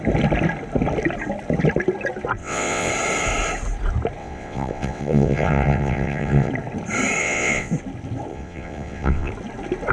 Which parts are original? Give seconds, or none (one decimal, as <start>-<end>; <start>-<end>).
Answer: 0.0-2.4; 2.9-4.2; 6.5-7.2; 7.7-8.3; 9.3-9.9